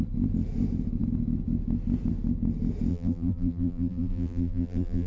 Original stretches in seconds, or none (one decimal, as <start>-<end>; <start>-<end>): 0.0-2.9